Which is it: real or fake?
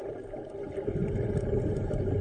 real